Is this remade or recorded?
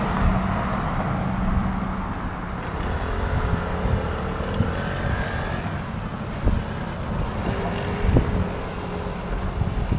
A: recorded